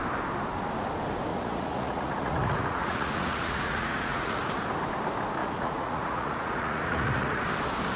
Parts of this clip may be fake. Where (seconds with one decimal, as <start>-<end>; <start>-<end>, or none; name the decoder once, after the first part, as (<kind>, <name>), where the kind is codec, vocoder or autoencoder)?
1.3-4.4 (vocoder, Vocos); 5.4-7.4